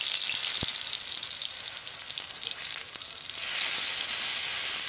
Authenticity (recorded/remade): recorded